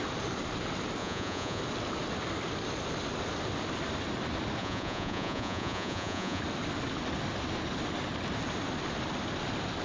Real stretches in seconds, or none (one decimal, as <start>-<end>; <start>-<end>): 0.0-1.0; 1.6-4.6; 6.4-9.8